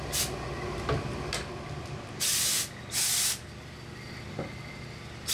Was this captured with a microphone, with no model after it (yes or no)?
yes